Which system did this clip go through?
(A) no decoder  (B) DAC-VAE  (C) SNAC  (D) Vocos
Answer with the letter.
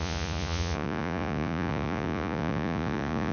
D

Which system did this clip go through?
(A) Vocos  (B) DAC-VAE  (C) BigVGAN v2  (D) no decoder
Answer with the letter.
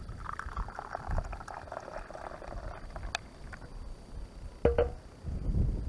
D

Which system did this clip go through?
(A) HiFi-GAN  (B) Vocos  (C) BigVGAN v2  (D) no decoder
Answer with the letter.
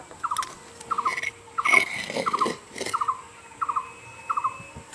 D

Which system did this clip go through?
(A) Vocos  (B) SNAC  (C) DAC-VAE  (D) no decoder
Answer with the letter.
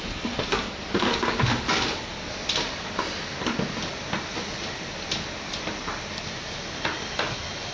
D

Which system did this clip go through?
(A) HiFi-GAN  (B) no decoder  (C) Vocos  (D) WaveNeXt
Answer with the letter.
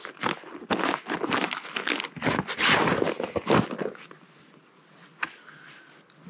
B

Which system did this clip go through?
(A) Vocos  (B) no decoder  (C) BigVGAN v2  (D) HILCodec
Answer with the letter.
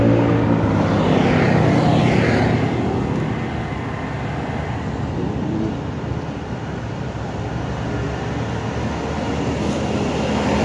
B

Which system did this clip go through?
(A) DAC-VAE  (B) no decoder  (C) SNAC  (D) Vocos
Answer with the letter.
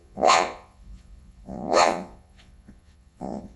D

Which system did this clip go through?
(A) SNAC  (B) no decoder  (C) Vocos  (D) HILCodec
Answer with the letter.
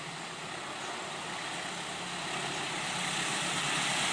B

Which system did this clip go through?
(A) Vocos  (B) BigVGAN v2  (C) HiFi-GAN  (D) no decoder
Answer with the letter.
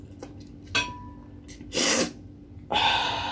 D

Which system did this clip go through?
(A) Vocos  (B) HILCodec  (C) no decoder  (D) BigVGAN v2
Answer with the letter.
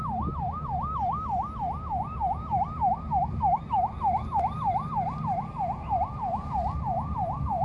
C